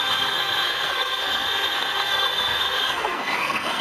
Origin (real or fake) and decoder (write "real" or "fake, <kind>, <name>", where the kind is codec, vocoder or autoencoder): fake, codec, SNAC